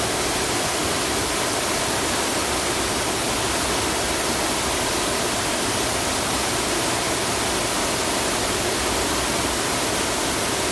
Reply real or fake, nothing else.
real